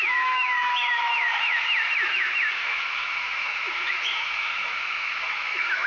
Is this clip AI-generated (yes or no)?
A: yes